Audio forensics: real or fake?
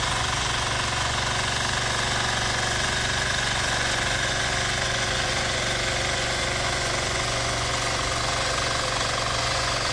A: fake